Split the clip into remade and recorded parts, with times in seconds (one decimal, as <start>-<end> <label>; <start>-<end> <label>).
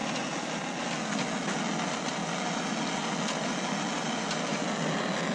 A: 0.0-5.3 recorded